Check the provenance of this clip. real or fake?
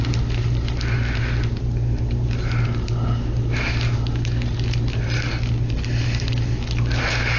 real